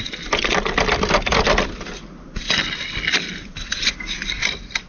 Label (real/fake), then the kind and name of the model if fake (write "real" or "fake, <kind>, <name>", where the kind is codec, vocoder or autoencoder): real